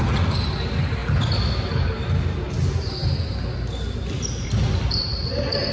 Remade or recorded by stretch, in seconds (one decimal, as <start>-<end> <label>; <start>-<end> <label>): 0.0-5.7 recorded